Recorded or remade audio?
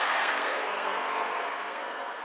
remade